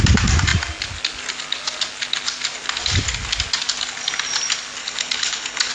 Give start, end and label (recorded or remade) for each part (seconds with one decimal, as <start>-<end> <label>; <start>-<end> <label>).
0.0-4.8 recorded; 4.8-5.7 remade